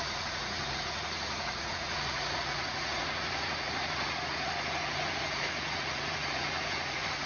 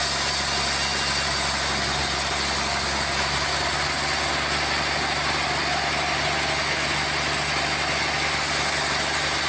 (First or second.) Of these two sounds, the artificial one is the first